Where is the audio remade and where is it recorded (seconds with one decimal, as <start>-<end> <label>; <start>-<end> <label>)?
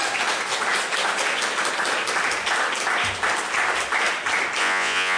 0.0-4.6 recorded; 4.6-5.2 remade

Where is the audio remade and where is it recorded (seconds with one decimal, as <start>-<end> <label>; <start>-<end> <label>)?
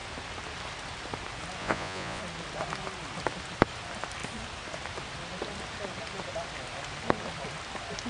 0.0-1.6 recorded; 1.6-2.2 remade; 2.2-8.1 recorded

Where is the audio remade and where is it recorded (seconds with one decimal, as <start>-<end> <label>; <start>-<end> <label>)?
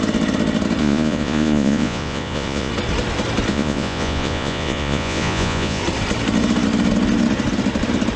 0.0-0.8 recorded; 0.8-2.7 remade; 2.7-3.5 recorded; 3.5-5.8 remade; 5.8-8.2 recorded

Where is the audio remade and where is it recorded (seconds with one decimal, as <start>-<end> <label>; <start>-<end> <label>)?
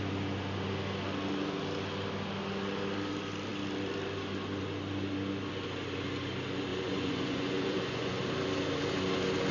0.0-6.7 recorded; 6.7-8.2 remade; 8.2-9.5 recorded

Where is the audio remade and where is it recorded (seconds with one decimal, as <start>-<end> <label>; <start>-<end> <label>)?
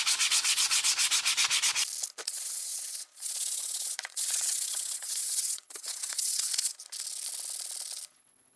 0.0-0.9 remade; 0.9-2.3 recorded; 2.3-6.7 remade; 6.7-8.1 recorded; 8.1-8.6 remade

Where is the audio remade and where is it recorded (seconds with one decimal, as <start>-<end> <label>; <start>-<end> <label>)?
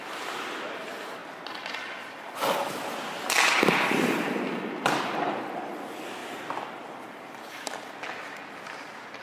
0.0-9.2 recorded